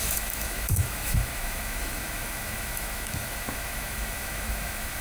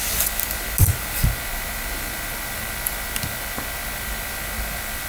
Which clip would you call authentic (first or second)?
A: second